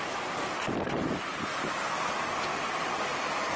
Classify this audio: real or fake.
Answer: real